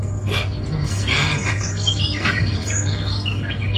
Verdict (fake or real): fake